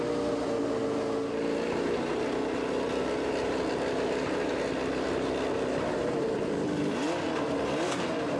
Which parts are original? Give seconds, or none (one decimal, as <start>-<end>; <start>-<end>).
0.0-5.9; 6.4-8.4